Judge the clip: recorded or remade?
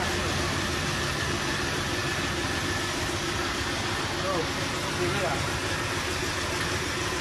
recorded